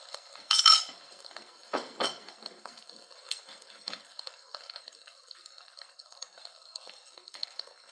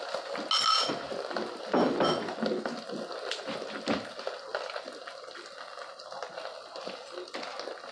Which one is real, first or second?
second